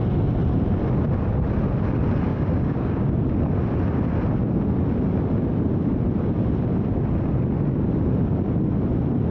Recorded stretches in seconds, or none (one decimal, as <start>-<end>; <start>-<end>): 0.0-2.3; 3.2-9.3